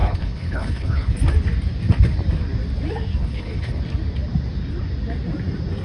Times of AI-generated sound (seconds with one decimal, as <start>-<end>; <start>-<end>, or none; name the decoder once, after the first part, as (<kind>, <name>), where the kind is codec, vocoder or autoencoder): 0.0-1.1 (codec, HILCodec); 3.2-3.8